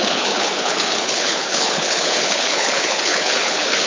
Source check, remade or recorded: remade